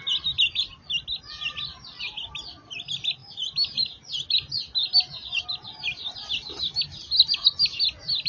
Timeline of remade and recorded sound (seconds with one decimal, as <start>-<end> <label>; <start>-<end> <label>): 0.0-8.3 recorded